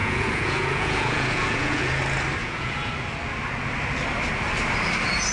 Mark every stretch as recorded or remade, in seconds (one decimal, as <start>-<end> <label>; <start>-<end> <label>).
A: 0.0-2.0 remade; 2.0-2.4 recorded; 2.4-2.9 remade; 2.9-5.3 recorded